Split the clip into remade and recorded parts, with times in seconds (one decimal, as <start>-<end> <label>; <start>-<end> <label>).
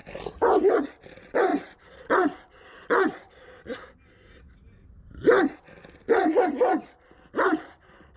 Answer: 0.0-8.2 recorded